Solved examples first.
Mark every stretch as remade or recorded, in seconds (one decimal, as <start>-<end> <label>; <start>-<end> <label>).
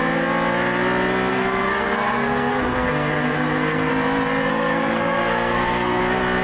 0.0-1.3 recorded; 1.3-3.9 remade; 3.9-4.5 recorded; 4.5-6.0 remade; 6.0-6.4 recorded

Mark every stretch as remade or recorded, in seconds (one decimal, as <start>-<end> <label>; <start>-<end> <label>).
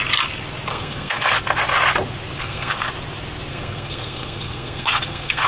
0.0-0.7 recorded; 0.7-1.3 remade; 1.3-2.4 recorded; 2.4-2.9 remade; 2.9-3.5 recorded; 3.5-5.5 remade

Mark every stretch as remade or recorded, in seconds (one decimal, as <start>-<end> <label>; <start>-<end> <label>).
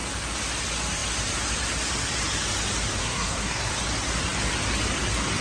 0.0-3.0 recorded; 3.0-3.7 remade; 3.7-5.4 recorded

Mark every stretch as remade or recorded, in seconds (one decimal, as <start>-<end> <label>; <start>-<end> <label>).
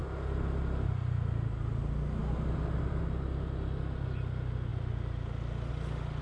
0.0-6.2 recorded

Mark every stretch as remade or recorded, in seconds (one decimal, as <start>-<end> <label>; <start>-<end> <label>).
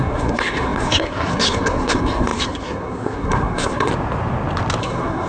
0.0-3.9 remade; 3.9-4.8 recorded; 4.8-5.3 remade